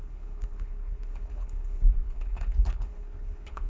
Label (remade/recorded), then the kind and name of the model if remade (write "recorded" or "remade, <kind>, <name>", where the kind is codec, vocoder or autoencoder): remade, codec, HILCodec